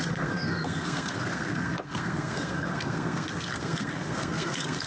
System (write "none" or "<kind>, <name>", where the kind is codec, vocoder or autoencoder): codec, SNAC